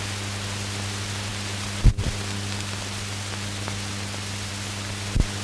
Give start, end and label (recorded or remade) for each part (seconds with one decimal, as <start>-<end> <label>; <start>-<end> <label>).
0.0-5.4 recorded